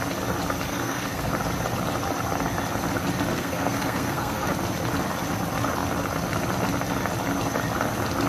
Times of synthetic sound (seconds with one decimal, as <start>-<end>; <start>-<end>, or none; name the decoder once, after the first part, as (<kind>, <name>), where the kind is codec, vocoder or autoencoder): 0.7-1.3 (codec, SNAC); 3.3-4.5